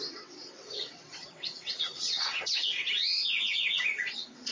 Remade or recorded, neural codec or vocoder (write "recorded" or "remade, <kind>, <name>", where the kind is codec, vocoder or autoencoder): remade, vocoder, WaveNeXt